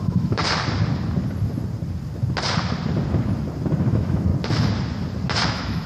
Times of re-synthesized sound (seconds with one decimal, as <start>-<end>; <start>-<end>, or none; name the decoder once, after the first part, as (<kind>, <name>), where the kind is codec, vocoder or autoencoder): 0.0-0.4 (autoencoder, DAC-VAE); 3.9-4.3; 5.5-5.9